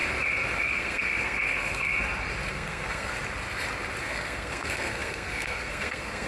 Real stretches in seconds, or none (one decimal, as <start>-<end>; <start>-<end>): 0.0-0.6; 1.9-2.5; 3.1-4.0